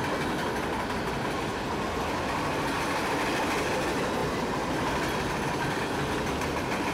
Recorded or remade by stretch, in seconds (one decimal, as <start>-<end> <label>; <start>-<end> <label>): 0.0-6.9 recorded